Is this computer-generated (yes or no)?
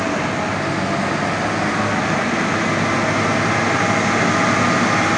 no